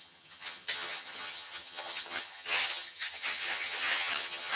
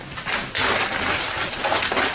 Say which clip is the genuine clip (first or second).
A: second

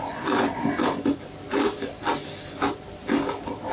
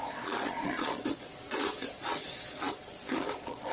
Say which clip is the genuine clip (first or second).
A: first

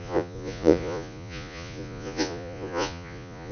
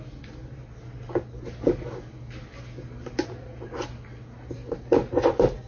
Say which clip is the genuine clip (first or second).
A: second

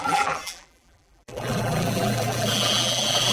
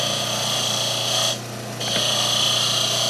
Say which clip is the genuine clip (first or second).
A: second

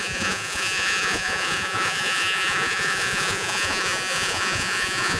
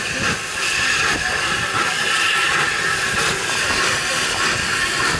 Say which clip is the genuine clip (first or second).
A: second